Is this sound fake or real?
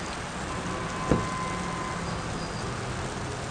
real